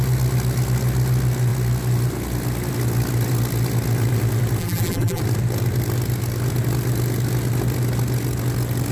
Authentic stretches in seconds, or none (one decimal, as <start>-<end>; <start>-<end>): 0.0-4.6; 5.2-8.9